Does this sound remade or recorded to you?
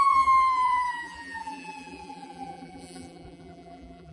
remade